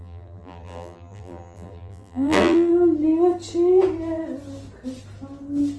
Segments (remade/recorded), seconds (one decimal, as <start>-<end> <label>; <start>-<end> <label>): 0.0-2.7 remade; 2.7-5.8 recorded